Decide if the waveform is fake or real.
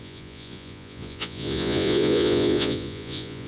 fake